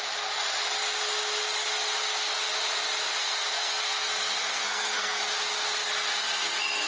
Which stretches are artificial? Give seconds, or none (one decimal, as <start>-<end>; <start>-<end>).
3.2-5.2

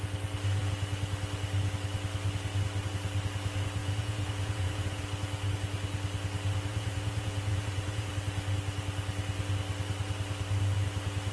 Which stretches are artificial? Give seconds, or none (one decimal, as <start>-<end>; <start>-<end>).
3.8-5.0; 6.7-8.1